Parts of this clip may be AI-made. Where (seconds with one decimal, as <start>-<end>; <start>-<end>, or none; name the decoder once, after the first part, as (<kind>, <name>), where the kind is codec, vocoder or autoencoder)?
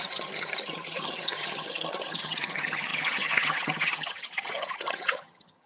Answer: 0.0-5.7 (vocoder, HiFi-GAN)